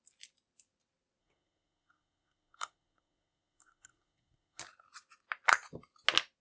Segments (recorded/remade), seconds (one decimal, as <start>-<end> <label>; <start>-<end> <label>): 0.0-1.2 recorded; 1.2-4.6 remade; 4.6-6.4 recorded